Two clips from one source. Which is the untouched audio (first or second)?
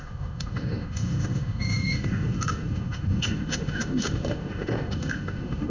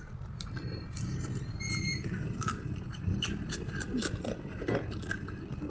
second